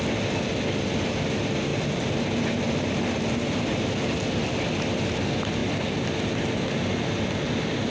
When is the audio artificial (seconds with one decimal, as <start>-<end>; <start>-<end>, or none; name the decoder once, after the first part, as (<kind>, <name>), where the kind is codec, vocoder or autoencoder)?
1.7-2.6 (vocoder, BigVGAN v2); 5.6-6.1